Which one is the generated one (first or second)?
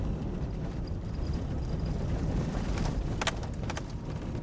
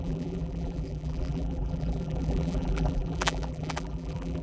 second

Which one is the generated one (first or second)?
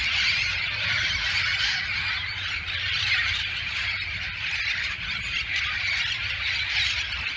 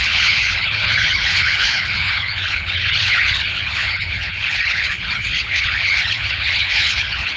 second